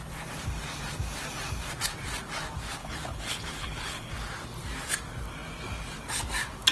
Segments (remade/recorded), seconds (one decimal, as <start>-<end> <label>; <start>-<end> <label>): 0.0-2.8 recorded; 2.8-4.1 remade; 4.1-6.7 recorded